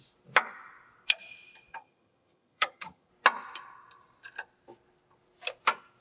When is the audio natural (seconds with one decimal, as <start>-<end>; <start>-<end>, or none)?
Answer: 0.0-1.7; 3.1-6.0